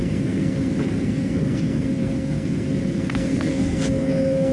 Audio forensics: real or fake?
fake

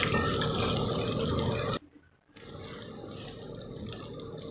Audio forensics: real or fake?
real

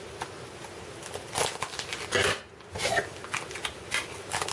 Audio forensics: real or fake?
real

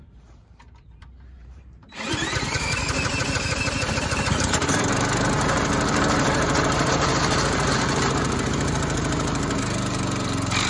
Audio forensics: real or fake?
fake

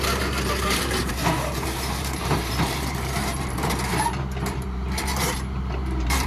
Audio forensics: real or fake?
fake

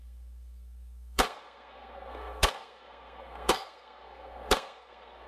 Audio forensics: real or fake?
fake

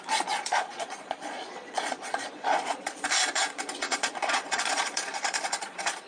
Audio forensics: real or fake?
fake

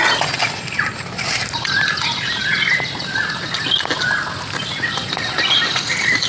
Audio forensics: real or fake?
real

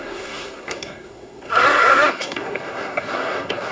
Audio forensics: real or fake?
fake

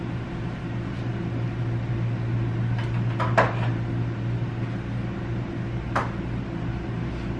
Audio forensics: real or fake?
real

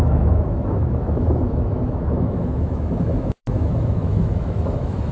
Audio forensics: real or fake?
fake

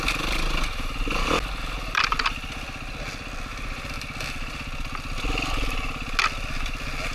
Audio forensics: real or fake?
real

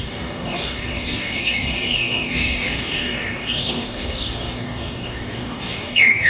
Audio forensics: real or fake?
fake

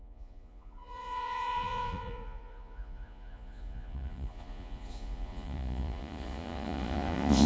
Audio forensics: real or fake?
fake